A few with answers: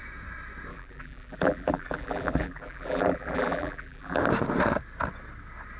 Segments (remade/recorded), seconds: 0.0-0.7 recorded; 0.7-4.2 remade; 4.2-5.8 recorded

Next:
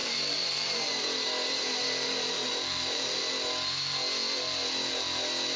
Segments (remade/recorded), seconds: 0.0-3.2 remade; 3.2-5.6 recorded

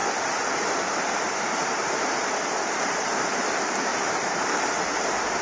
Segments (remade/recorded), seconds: 0.0-3.2 remade; 3.2-3.9 recorded; 3.9-4.7 remade; 4.7-5.4 recorded